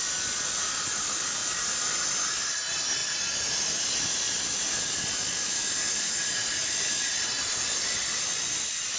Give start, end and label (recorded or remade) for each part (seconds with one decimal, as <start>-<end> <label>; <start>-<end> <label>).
0.0-9.0 recorded